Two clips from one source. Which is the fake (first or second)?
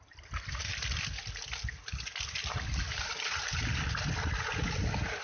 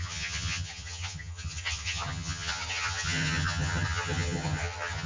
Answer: second